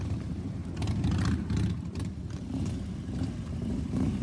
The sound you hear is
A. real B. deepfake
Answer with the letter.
B